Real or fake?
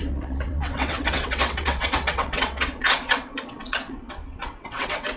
fake